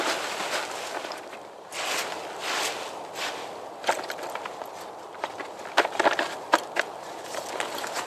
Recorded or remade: recorded